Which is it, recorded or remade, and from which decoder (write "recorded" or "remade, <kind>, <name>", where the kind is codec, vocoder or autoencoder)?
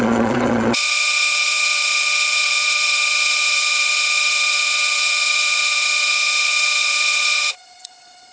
remade, vocoder, Vocos